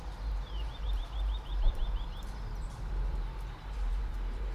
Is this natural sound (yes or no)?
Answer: no